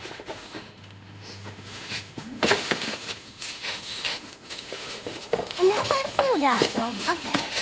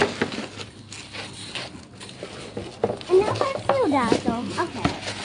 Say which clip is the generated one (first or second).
first